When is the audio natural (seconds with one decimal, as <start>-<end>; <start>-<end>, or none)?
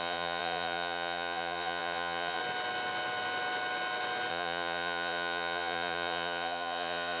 2.4-4.3